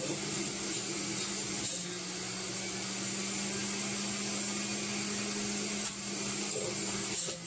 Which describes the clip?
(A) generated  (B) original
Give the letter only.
B